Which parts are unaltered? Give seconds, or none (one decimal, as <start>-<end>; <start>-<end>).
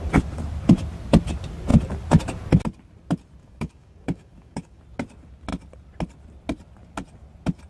0.0-3.4; 4.8-7.7